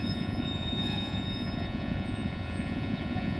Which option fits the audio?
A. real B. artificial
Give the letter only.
B